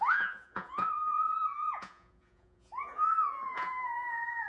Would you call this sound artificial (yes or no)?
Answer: yes